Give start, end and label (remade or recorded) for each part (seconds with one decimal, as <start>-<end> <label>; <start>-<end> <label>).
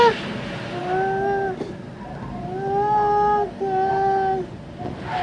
0.0-5.2 recorded